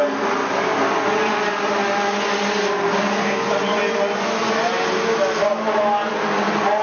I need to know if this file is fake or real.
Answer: real